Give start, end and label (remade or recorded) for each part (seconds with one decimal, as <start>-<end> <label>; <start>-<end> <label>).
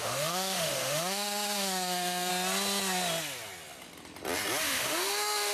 0.0-2.3 remade; 2.3-4.6 recorded; 4.6-5.5 remade